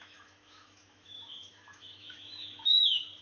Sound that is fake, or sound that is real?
fake